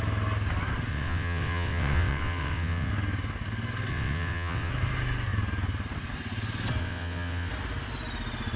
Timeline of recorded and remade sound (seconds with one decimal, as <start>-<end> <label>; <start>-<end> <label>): 0.0-0.9 recorded; 0.9-2.9 remade; 2.9-3.9 recorded; 3.9-4.7 remade; 4.7-6.8 recorded; 6.8-7.5 remade; 7.5-8.6 recorded